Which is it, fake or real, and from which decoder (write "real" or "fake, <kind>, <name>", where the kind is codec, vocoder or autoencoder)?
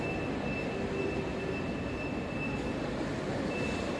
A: real